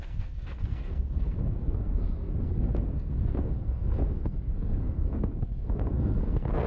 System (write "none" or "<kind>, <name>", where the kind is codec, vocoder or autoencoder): codec, SNAC